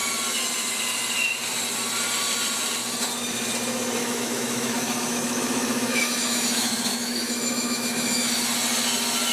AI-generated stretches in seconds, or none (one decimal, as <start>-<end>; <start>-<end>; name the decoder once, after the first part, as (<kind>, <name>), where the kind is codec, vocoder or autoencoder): 4.0-8.4 (autoencoder, DAC-VAE)